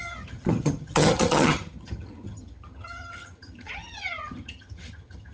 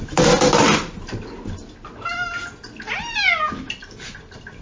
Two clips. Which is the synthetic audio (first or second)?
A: first